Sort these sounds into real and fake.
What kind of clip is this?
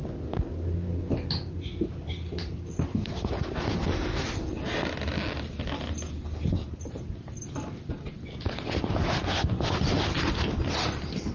real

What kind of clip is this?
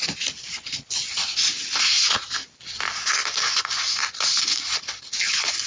real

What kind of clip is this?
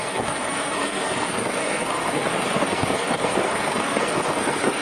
fake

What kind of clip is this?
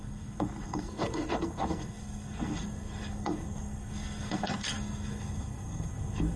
fake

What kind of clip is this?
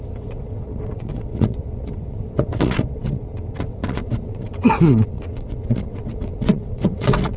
fake